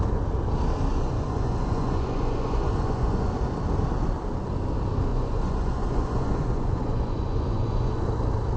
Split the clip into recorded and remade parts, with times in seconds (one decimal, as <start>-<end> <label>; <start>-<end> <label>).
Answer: 0.0-0.9 recorded; 0.9-3.4 remade; 3.4-5.1 recorded; 5.1-8.0 remade; 8.0-8.6 recorded